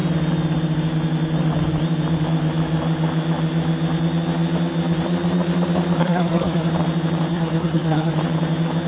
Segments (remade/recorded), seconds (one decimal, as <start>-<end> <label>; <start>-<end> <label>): 0.0-6.0 recorded; 6.0-6.7 remade; 6.7-7.3 recorded; 7.3-8.1 remade; 8.1-8.9 recorded